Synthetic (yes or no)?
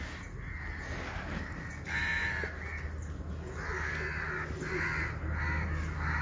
no